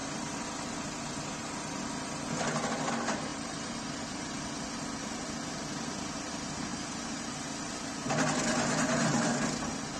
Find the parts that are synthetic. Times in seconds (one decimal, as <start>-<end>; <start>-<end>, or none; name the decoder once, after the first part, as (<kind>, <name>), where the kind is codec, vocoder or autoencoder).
3.3-4.3 (vocoder, BigVGAN v2); 6.7-7.3